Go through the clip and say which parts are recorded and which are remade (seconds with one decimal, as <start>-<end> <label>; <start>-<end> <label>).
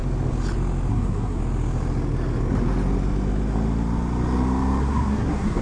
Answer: 0.0-0.9 recorded; 0.9-1.4 remade; 1.4-4.8 recorded; 4.8-5.6 remade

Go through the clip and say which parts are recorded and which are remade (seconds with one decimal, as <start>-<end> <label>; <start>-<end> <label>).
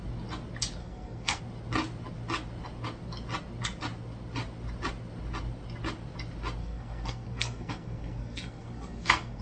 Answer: 0.0-0.8 recorded; 0.8-1.4 remade; 1.4-6.6 recorded; 6.6-9.4 remade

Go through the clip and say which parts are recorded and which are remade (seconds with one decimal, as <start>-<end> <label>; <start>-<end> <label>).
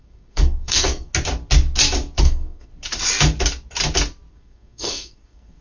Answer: 0.0-1.1 remade; 1.1-2.2 recorded; 2.2-2.7 remade; 2.7-4.3 recorded; 4.3-5.6 remade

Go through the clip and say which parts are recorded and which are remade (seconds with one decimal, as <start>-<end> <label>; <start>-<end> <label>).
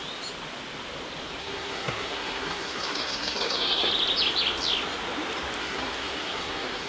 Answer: 0.0-1.4 recorded; 1.4-3.9 remade; 3.9-5.6 recorded; 5.6-6.9 remade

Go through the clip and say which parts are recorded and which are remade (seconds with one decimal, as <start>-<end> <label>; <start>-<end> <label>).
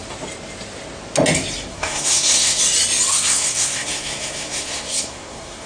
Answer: 0.0-1.7 recorded; 1.7-2.6 remade; 2.6-3.1 recorded; 3.1-5.7 remade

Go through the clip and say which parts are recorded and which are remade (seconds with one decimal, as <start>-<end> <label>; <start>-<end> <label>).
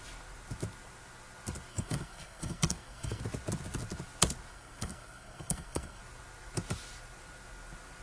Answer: 0.0-1.7 recorded; 1.7-3.2 remade; 3.2-4.5 recorded; 4.5-6.0 remade; 6.0-8.0 recorded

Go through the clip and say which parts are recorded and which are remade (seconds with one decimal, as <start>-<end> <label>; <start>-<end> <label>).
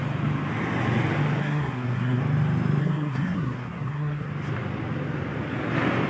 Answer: 0.0-1.4 recorded; 1.4-2.2 remade; 2.2-2.8 recorded; 2.8-4.3 remade; 4.3-6.1 recorded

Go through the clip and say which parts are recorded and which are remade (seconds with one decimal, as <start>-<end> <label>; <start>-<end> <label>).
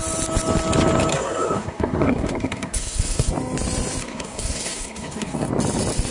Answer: 0.0-1.1 recorded; 1.1-3.3 remade; 3.3-4.0 recorded; 4.0-5.5 remade; 5.5-6.1 recorded